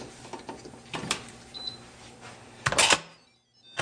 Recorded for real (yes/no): no